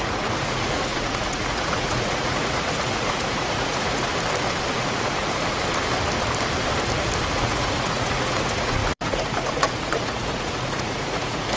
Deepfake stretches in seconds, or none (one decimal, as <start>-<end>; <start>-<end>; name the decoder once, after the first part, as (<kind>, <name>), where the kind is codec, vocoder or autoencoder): 0.0-4.1 (vocoder, Vocos); 4.7-5.6; 7.3-11.6